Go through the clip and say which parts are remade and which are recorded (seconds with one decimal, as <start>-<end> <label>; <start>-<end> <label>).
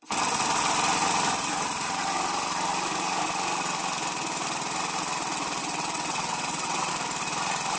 0.0-5.6 recorded; 5.6-6.9 remade; 6.9-7.8 recorded